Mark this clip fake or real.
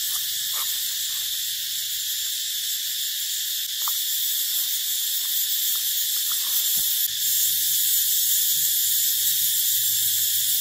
real